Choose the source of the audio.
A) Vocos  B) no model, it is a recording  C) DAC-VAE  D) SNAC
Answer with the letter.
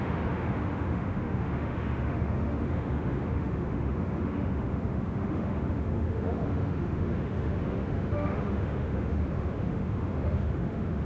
C